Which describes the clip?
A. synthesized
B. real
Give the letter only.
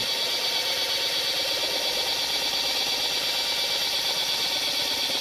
B